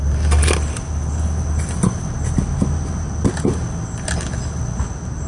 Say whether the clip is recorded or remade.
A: recorded